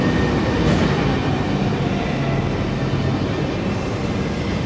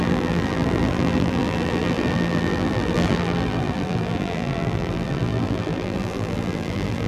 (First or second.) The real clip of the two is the first